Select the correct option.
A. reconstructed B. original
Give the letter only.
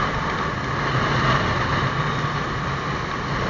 B